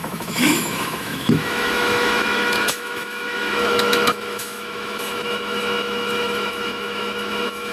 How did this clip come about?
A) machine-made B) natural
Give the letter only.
A